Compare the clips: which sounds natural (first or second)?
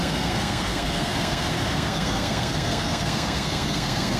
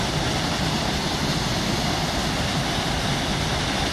second